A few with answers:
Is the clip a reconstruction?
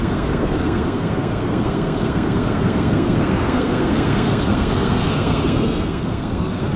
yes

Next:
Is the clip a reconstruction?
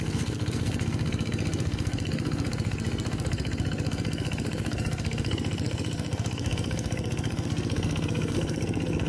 yes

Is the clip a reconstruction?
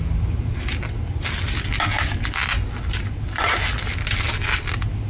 no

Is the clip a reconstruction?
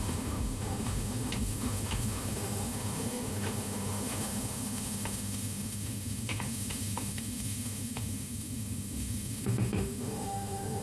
yes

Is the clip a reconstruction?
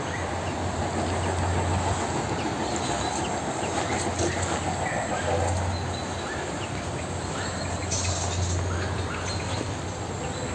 no